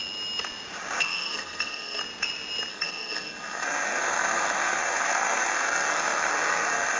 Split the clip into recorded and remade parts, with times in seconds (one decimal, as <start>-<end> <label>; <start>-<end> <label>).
0.0-1.0 recorded; 1.0-2.0 remade; 2.0-2.7 recorded; 2.7-7.0 remade